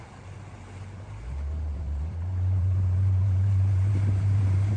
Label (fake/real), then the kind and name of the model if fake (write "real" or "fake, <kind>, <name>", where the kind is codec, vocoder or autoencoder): fake, vocoder, BigVGAN v2